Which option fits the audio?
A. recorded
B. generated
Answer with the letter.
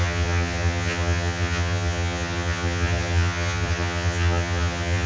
B